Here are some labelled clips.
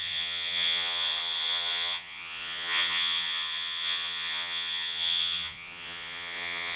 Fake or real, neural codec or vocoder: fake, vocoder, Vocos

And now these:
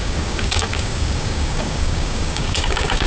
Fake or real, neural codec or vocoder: fake, codec, DAC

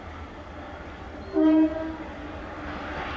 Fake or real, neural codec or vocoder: real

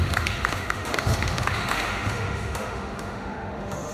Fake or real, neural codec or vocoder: fake, autoencoder, DAC-VAE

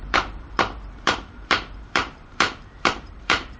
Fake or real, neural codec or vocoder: fake, vocoder, BigVGAN v2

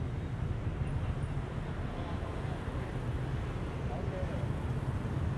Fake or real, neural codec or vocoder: real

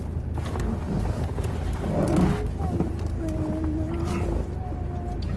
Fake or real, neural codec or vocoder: real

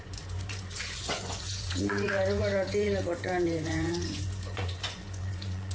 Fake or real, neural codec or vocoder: fake, vocoder, Vocos